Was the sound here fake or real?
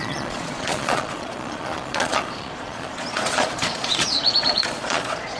fake